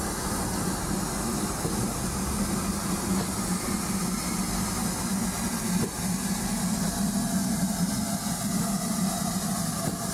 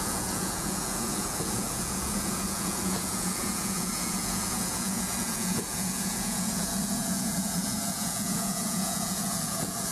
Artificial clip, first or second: second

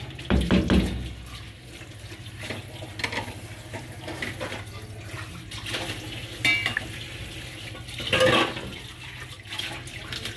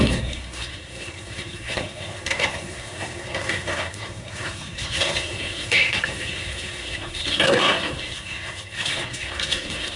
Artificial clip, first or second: second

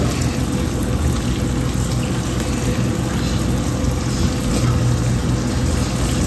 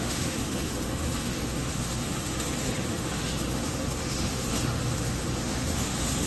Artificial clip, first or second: second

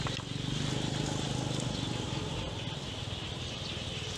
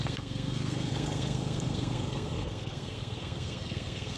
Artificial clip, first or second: second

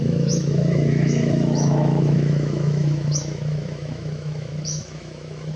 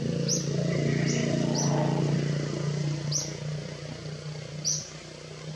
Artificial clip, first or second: first